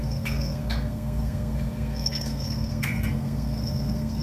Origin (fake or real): fake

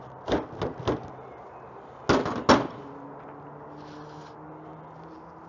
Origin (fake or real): real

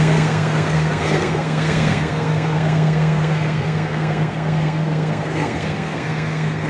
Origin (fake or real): fake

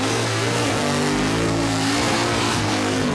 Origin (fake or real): fake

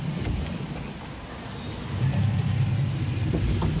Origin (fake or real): real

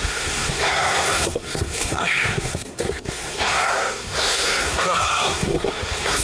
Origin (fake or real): fake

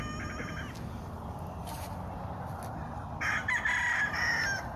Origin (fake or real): real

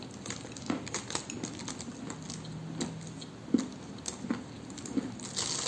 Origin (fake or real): real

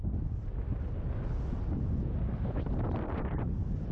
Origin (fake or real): real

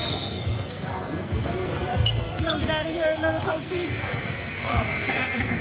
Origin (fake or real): fake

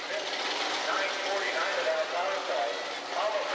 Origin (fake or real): real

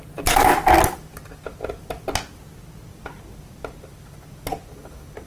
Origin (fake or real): real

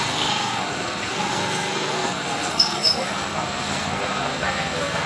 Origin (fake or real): fake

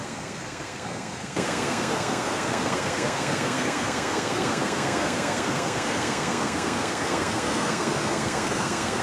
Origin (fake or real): fake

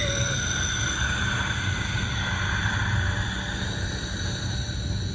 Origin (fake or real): real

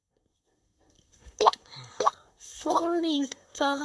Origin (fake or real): fake